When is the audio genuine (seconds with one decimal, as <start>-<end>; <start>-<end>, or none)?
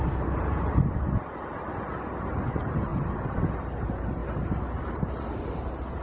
1.7-2.4; 2.9-3.8; 4.2-4.8